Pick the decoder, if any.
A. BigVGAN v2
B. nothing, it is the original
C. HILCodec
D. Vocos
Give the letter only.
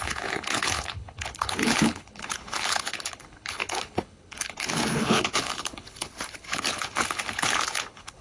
C